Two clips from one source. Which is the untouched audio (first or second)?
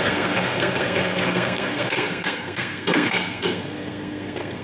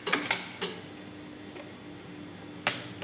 second